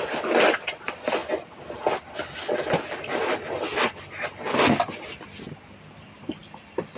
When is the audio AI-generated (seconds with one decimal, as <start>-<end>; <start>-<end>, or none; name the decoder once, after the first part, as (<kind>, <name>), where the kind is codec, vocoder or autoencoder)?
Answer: none